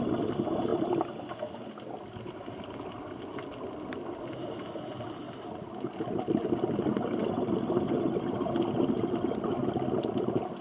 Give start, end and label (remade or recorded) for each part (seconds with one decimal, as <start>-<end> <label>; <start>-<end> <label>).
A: 0.0-10.6 recorded